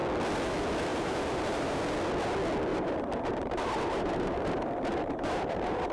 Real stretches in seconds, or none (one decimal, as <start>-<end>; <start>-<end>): 0.0-0.9; 1.8-2.7